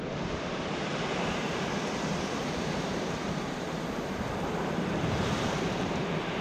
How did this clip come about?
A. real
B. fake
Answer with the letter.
B